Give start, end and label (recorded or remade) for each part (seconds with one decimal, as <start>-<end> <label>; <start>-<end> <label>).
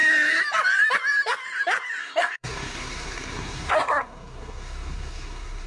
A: 0.0-2.0 recorded; 2.0-5.7 remade